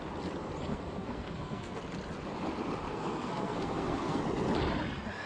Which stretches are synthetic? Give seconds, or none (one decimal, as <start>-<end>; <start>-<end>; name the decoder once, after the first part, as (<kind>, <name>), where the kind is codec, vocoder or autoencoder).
0.7-1.8 (codec, SNAC); 2.9-4.2